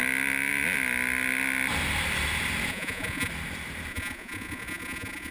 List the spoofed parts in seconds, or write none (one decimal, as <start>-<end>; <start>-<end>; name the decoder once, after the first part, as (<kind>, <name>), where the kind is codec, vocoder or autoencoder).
2.7-3.3 (vocoder, Vocos); 3.9-5.3